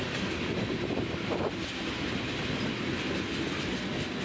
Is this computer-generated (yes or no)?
no